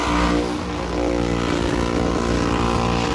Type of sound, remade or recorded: recorded